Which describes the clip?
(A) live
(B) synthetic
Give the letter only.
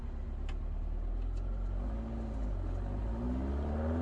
A